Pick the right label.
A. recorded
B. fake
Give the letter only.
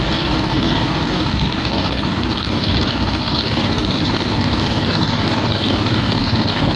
B